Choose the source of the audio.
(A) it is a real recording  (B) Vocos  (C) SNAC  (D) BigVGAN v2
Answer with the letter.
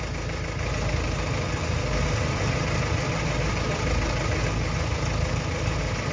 A